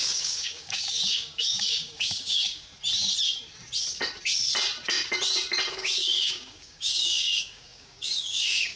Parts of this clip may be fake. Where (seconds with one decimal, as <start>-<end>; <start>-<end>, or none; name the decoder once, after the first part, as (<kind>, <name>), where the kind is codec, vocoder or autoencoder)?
0.0-2.7 (codec, DAC); 5.7-8.8